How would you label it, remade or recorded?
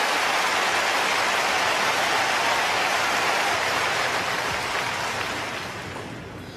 recorded